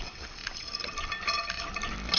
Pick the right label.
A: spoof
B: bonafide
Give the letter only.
B